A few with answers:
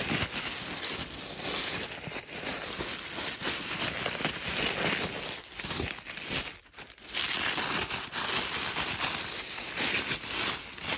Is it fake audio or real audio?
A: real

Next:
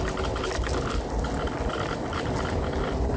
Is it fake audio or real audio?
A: real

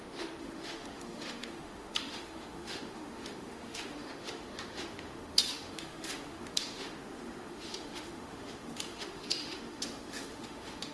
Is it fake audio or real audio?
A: fake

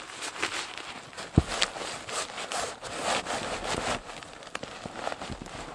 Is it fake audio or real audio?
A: real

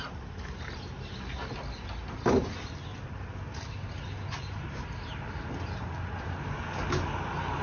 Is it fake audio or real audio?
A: real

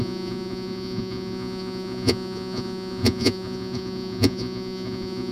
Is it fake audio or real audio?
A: fake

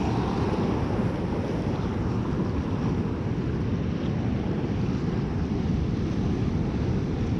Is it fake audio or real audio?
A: real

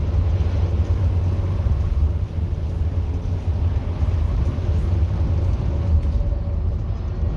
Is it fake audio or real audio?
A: real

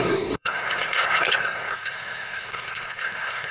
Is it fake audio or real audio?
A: fake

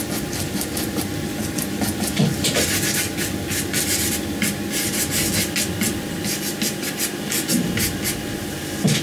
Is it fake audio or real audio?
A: real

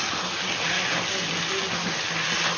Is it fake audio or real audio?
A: real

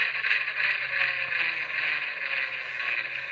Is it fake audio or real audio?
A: real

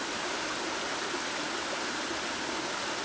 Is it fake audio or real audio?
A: real